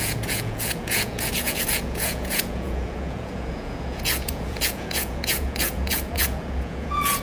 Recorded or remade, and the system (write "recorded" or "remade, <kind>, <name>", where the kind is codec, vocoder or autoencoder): remade, vocoder, Vocos